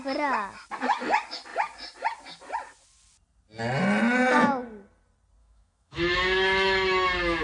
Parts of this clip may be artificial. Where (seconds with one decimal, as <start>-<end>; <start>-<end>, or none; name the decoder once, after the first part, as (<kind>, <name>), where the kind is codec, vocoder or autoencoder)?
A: 5.4-7.4 (autoencoder, DAC-VAE)